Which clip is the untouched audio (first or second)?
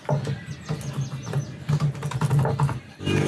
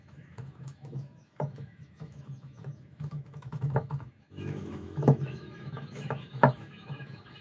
first